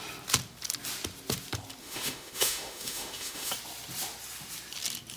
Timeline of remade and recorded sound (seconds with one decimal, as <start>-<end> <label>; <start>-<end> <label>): 0.0-1.8 recorded; 1.8-3.5 remade; 3.5-5.2 recorded

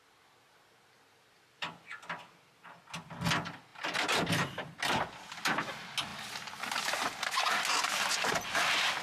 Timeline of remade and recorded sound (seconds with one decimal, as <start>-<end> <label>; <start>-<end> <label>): 0.0-9.0 recorded

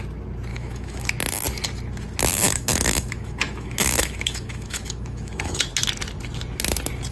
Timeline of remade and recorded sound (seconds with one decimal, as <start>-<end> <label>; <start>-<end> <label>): 0.0-0.5 recorded; 0.5-1.1 remade; 1.1-2.3 recorded; 2.3-5.6 remade; 5.6-7.1 recorded